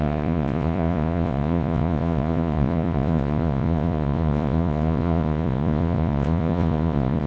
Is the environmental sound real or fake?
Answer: fake